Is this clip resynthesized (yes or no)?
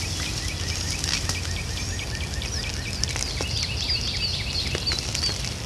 no